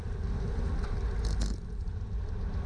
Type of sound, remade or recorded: recorded